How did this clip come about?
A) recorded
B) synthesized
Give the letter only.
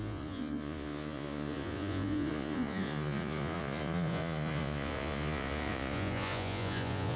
B